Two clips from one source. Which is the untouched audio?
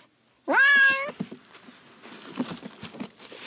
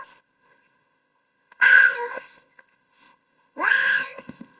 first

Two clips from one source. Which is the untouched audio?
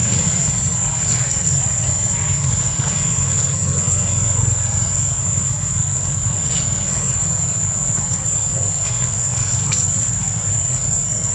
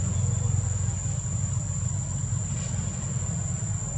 second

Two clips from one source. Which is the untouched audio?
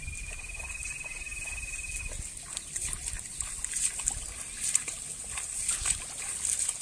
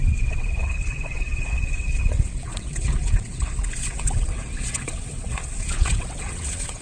first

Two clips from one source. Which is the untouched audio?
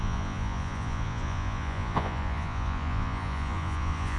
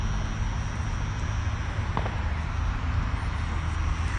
second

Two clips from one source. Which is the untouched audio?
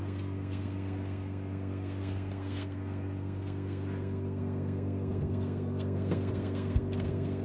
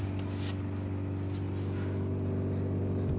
second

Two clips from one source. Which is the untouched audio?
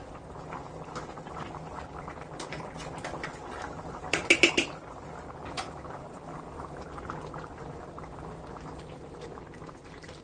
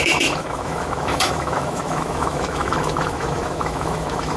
first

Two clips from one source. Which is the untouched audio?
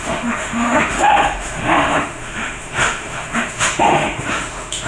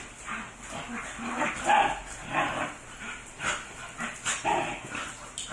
second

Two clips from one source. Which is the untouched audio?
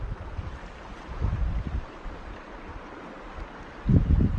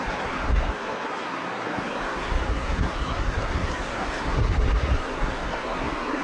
first